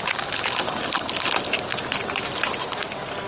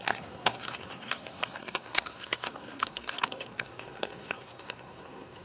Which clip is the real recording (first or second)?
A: first